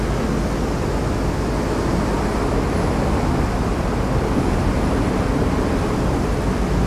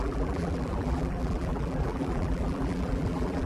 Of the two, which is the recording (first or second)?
first